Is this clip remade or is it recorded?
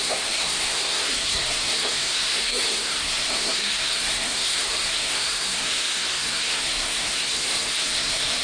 remade